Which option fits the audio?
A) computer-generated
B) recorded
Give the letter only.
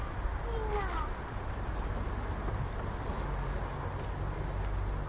B